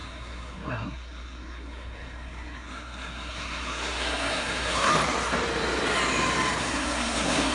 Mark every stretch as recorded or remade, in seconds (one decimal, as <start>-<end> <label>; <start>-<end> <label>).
0.0-4.9 remade; 4.9-6.6 recorded; 6.6-7.5 remade